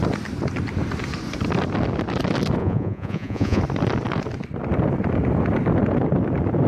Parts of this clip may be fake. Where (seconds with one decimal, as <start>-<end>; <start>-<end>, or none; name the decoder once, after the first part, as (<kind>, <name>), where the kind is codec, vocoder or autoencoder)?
2.6-3.6 (vocoder, Vocos)